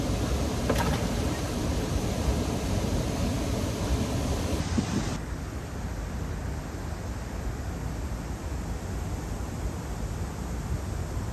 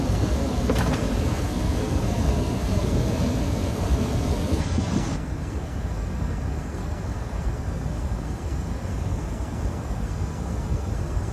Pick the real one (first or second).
first